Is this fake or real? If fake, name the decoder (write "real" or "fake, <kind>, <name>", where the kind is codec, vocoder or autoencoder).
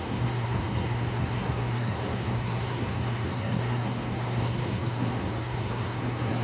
fake, codec, SNAC